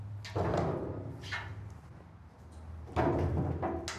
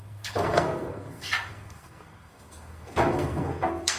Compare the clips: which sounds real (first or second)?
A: first